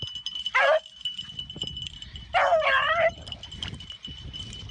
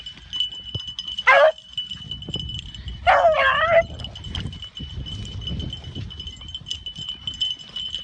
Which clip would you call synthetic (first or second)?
first